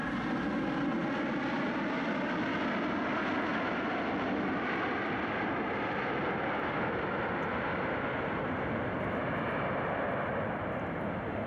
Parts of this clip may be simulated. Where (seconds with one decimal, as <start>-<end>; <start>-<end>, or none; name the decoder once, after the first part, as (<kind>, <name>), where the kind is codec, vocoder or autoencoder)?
none